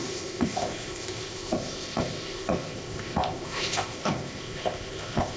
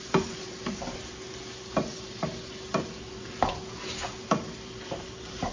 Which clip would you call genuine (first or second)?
second